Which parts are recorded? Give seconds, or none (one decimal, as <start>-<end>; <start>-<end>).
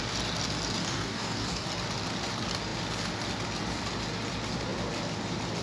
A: 0.0-0.8; 1.7-5.6